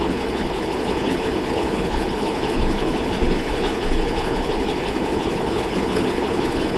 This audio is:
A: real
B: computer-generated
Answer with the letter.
B